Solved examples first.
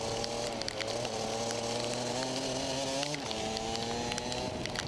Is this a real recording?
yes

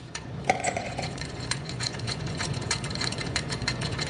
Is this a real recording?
no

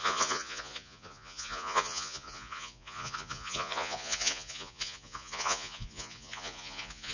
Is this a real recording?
no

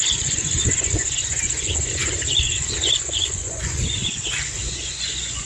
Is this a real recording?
no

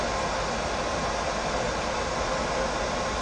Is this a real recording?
yes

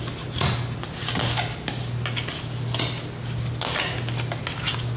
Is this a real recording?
yes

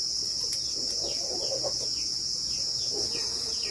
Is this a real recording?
no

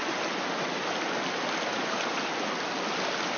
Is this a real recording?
yes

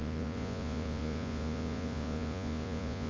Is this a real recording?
no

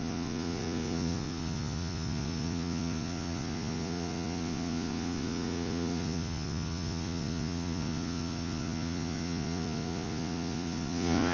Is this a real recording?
no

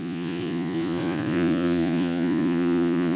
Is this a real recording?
no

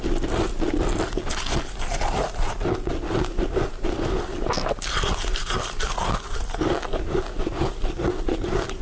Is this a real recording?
yes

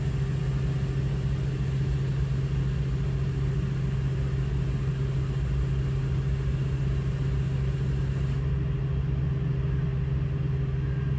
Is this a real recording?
yes